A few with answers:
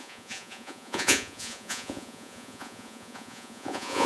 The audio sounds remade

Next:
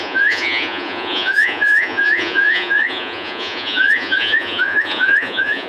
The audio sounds remade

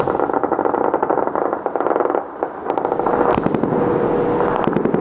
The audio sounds recorded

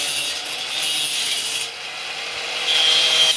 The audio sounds recorded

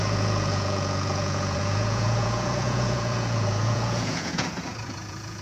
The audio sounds remade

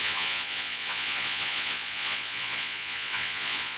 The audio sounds remade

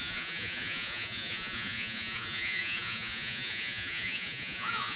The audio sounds remade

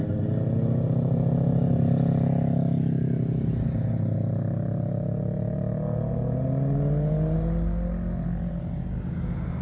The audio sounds recorded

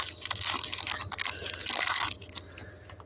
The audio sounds recorded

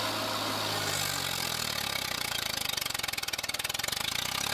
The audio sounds recorded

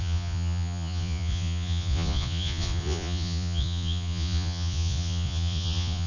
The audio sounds remade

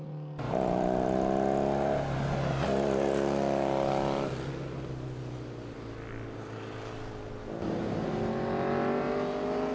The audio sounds recorded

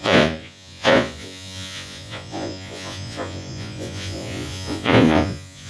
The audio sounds remade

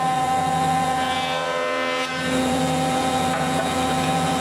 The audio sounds remade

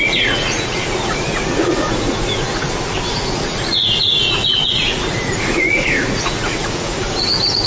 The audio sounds remade